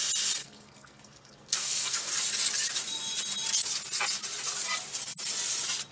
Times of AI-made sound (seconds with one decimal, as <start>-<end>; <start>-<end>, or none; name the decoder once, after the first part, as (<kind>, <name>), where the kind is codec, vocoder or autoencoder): 0.4-2.1 (codec, SNAC)